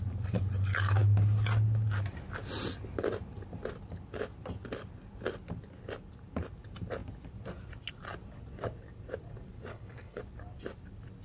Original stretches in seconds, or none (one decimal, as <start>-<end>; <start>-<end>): 0.0-9.7; 10.2-11.2